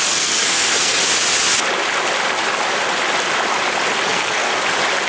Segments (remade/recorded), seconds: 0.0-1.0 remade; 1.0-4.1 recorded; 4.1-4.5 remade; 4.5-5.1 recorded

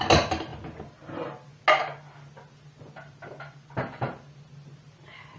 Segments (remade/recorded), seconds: 0.0-5.4 recorded

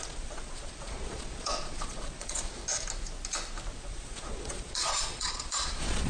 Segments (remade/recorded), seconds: 0.0-2.6 remade; 2.6-3.8 recorded; 3.8-6.1 remade

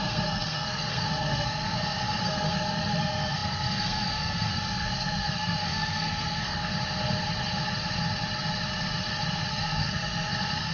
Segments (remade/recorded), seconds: 0.0-6.7 remade; 6.7-9.5 recorded; 9.5-10.7 remade

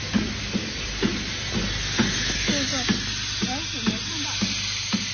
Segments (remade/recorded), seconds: 0.0-5.1 recorded

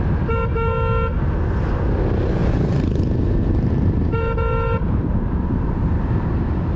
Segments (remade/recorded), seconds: 0.0-2.4 recorded; 2.4-6.8 remade